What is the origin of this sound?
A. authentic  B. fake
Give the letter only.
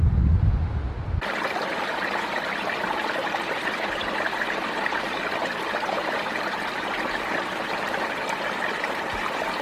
A